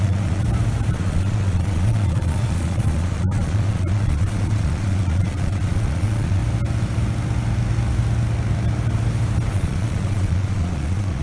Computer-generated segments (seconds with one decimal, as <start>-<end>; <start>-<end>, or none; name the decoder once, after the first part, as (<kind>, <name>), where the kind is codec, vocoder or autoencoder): 0.0-0.4 (vocoder, Vocos); 0.9-6.4; 9.5-11.2